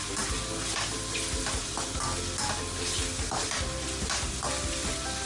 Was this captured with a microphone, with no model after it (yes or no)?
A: yes